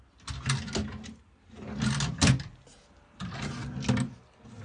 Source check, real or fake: real